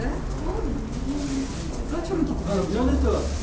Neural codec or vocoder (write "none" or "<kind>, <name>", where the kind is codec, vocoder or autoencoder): none